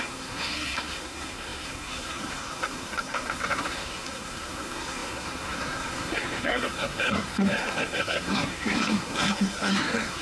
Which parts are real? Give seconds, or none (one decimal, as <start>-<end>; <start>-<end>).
none